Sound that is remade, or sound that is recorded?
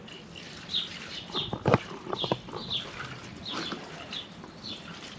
recorded